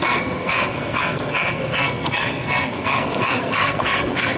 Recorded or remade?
remade